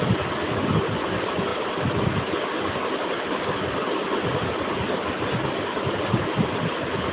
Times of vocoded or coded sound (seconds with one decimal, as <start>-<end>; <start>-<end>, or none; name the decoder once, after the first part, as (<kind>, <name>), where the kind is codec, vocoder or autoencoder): none